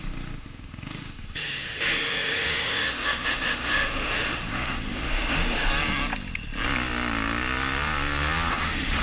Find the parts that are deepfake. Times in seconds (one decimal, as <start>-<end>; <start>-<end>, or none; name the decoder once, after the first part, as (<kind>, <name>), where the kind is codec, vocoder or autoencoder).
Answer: 0.0-5.7 (autoencoder, DAC-VAE); 8.5-9.0